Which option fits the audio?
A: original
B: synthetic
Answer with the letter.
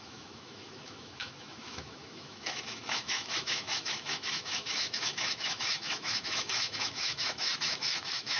B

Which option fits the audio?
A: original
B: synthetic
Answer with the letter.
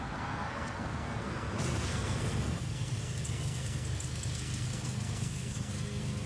B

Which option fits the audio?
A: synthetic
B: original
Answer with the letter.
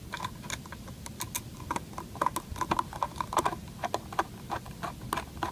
B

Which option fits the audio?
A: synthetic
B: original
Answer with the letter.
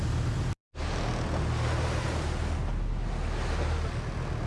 B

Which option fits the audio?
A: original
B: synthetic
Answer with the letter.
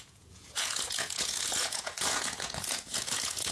B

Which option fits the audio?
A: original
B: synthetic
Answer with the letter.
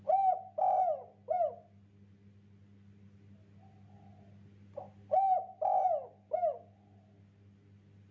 A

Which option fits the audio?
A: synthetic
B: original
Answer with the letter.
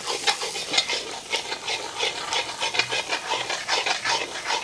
B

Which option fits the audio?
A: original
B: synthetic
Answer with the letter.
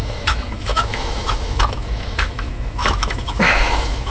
B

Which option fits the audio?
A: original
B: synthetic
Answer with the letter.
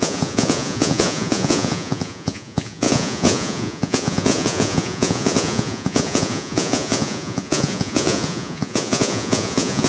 B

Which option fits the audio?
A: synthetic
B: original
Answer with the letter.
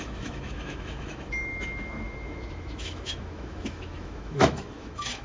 A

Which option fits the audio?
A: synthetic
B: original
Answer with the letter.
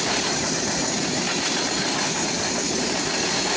A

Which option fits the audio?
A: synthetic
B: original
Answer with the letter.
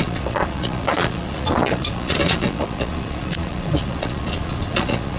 A